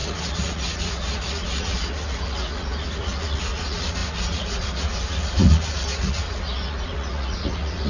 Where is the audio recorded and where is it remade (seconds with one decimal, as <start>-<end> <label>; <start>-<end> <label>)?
0.0-7.9 remade